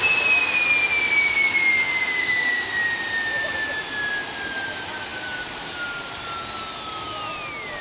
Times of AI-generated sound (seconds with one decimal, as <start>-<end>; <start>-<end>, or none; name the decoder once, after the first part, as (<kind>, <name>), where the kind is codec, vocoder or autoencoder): 2.2-2.8 (codec, DAC)